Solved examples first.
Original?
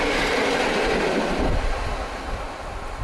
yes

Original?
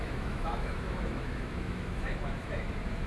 no